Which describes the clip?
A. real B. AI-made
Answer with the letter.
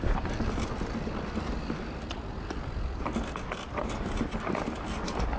A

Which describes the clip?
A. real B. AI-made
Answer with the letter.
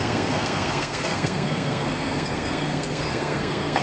B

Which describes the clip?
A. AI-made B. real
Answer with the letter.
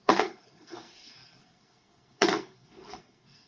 A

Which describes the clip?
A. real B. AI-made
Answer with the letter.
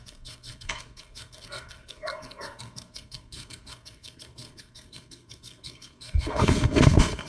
B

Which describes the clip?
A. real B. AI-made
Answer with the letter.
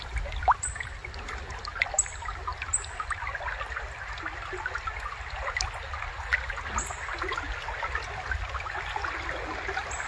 A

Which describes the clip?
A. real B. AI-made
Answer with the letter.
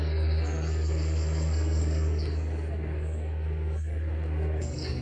B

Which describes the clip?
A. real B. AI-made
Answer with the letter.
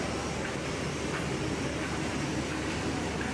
A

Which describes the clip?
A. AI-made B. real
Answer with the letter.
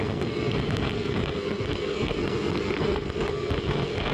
A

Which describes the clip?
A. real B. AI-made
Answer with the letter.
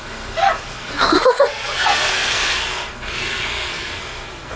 B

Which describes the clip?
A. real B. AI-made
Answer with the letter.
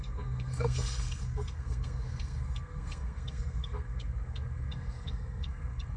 B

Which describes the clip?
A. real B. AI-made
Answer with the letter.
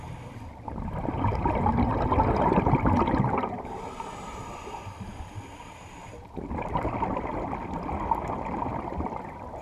A